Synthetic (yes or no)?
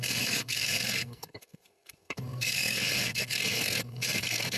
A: yes